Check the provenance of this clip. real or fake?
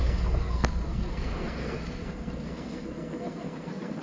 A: fake